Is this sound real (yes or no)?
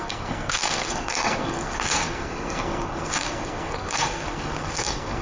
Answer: no